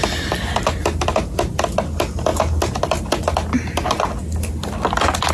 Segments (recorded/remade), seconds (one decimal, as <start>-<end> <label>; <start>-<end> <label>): 0.0-5.3 recorded